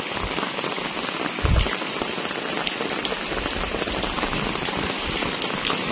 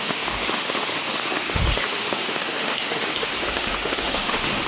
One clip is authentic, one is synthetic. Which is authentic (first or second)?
first